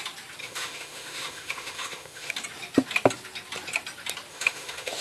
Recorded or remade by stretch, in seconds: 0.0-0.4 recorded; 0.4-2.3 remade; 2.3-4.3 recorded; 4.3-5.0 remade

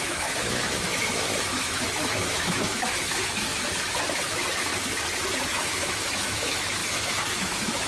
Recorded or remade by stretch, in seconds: 0.0-3.5 remade; 3.5-4.1 recorded; 4.1-4.7 remade; 4.7-5.4 recorded; 5.4-7.9 remade

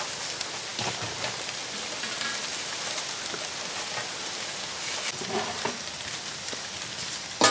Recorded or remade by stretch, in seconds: 0.0-7.5 recorded

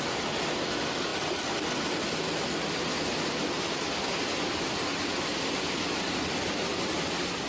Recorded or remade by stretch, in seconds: 0.0-7.5 recorded

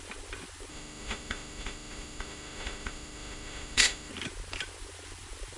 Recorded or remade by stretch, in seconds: 0.0-0.7 recorded; 0.7-4.1 remade; 4.1-5.6 recorded

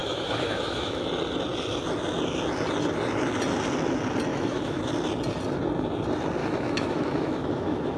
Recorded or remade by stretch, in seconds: 0.0-1.1 remade; 1.1-4.3 recorded; 4.3-4.8 remade; 4.8-6.4 recorded; 6.4-8.0 remade

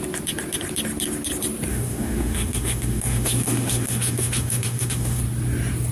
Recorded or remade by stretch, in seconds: 0.0-1.7 recorded; 1.7-5.2 remade; 5.2-5.9 recorded